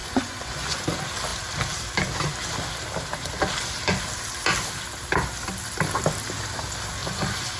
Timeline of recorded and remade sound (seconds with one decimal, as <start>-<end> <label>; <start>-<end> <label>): 0.0-0.8 remade; 0.8-7.0 recorded; 7.0-7.6 remade